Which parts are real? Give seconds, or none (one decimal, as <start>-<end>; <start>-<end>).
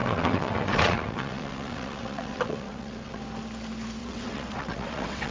3.2-4.0